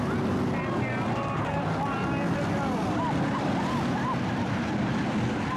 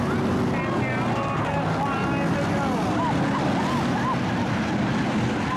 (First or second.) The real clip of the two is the second